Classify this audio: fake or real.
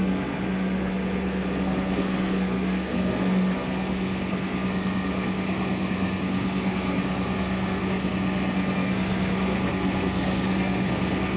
fake